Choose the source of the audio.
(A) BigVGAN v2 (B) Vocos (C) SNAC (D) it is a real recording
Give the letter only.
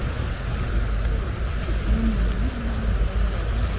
D